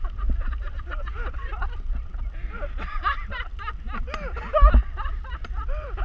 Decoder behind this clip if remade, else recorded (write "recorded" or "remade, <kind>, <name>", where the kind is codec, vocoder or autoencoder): recorded